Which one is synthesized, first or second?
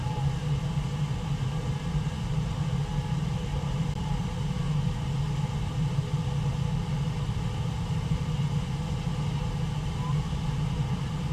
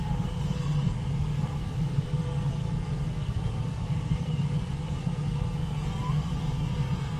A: second